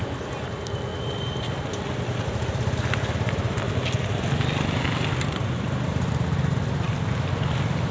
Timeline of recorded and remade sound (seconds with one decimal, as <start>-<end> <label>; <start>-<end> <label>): 0.0-7.9 recorded